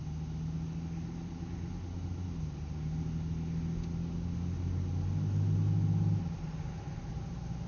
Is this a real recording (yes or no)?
yes